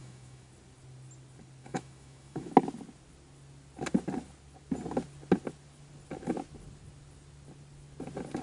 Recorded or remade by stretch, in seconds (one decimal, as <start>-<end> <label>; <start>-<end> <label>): 0.0-0.5 remade; 0.5-1.6 recorded; 1.6-2.5 remade; 2.5-8.4 recorded